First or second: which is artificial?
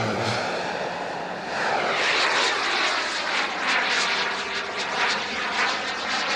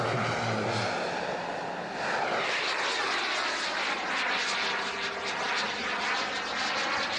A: first